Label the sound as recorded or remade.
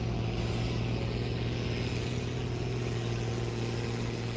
recorded